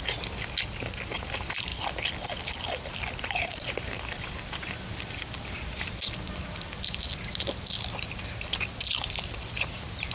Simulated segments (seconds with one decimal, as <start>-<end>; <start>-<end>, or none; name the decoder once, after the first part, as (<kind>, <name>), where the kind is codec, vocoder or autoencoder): none